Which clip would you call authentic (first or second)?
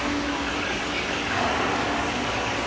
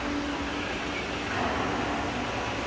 second